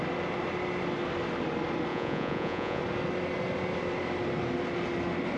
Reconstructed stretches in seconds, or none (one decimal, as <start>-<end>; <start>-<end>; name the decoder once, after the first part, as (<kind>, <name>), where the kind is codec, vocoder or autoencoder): 1.9-2.8 (vocoder, Vocos)